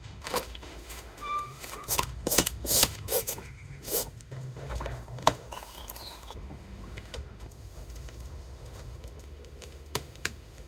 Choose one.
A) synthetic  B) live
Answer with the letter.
A